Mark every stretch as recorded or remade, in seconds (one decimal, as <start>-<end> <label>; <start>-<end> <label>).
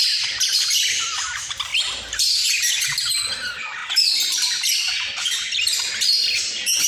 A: 0.0-6.9 recorded